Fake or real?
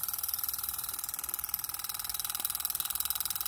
real